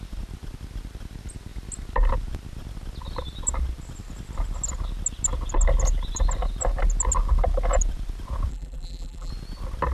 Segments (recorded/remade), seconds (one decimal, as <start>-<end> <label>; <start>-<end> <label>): 0.0-8.5 recorded; 8.5-9.3 remade; 9.3-9.9 recorded